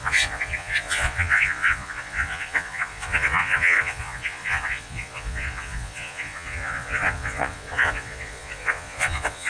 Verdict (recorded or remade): remade